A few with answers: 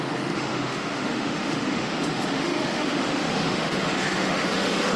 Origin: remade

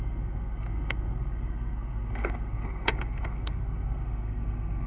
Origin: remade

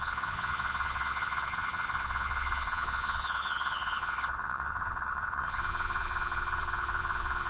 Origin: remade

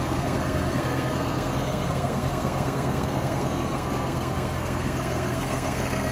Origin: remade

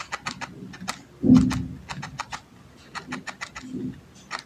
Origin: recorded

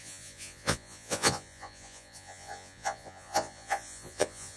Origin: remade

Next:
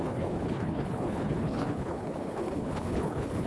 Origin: remade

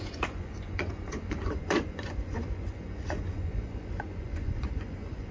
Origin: remade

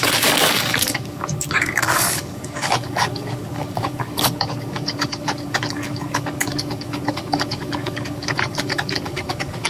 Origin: remade